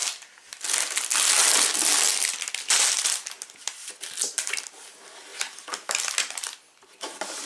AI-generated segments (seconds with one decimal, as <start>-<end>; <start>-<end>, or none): none